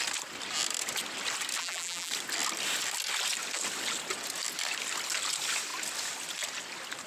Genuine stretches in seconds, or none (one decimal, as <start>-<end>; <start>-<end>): 0.0-1.6; 2.1-7.1

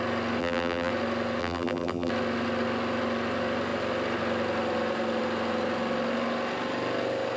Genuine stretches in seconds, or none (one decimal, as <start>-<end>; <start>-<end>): 0.0-0.4; 0.9-1.4; 2.1-7.4

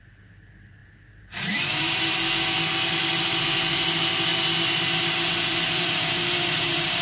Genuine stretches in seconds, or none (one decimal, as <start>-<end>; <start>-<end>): 0.0-0.8; 2.1-5.5

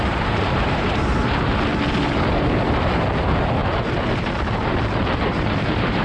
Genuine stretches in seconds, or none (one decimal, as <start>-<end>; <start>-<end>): 1.7-2.7

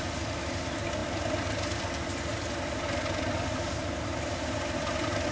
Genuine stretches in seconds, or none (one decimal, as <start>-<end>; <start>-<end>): 0.0-5.3

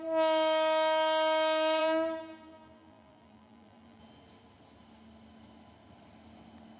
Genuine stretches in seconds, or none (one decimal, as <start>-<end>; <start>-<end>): 0.0-1.8; 4.0-6.8